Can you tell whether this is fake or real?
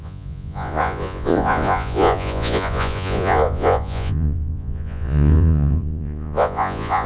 fake